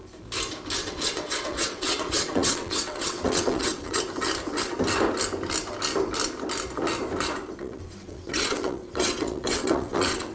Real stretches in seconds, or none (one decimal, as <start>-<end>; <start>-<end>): 0.0-0.8; 4.0-7.6